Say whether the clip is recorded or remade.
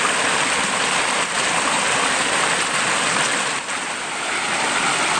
recorded